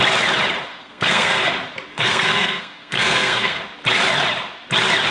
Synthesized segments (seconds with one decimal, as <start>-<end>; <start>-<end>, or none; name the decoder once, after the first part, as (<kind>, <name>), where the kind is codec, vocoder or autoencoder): 0.7-1.5 (codec, SNAC); 1.9-3.6